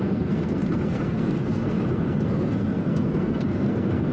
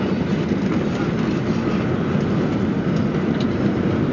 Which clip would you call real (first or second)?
second